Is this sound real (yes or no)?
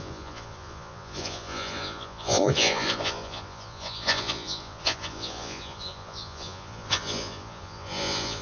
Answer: no